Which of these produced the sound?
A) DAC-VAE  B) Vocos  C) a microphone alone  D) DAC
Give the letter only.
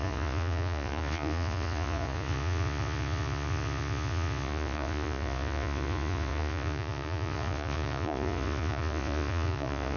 B